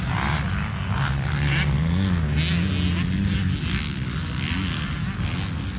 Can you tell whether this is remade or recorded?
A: recorded